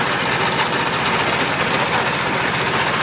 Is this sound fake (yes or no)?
no